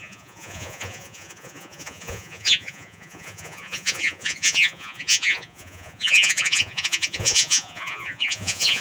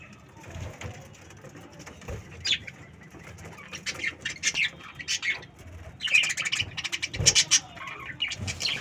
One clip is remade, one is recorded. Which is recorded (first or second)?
second